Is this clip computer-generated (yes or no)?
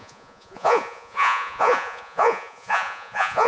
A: yes